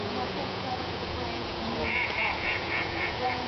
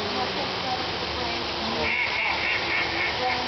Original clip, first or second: second